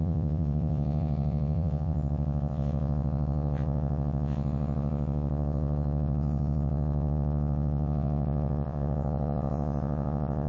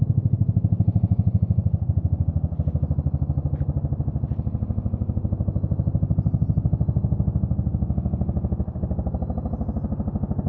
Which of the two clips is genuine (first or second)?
second